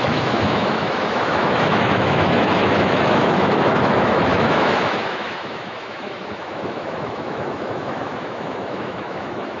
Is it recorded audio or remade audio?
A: remade